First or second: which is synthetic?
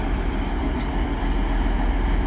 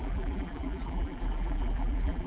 second